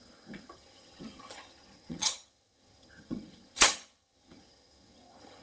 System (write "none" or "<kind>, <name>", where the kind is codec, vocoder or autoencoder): vocoder, HiFi-GAN